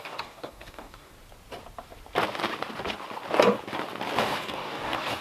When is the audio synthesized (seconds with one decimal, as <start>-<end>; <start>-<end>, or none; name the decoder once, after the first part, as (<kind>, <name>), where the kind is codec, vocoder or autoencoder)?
0.0-1.1 (codec, DAC); 4.2-5.2